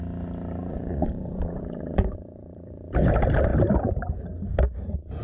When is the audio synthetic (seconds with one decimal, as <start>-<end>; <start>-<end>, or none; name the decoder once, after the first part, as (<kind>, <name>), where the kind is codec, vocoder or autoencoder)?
0.6-2.9 (vocoder, Vocos)